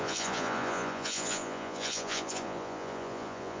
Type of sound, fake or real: fake